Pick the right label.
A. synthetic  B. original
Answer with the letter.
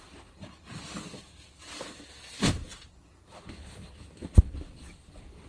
B